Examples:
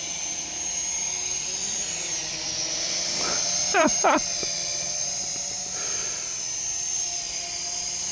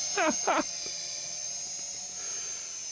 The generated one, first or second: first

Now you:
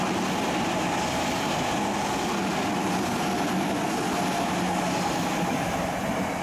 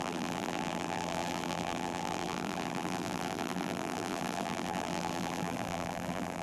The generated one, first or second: second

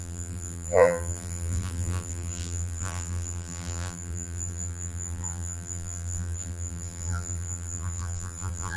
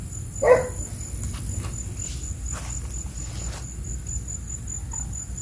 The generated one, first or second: first